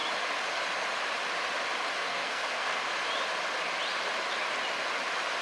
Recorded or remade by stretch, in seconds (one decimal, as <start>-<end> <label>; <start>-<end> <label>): 0.0-2.0 recorded; 2.0-2.9 remade; 2.9-5.4 recorded